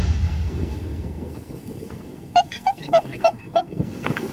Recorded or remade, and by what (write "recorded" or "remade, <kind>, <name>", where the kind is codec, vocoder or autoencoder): remade, codec, SNAC